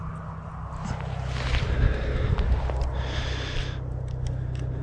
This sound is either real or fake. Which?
real